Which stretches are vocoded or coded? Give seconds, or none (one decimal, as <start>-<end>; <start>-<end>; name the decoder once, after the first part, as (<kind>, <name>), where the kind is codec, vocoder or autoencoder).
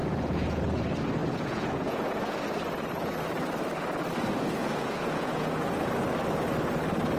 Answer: 0.0-0.6 (vocoder, Vocos); 1.2-2.4; 4.6-5.9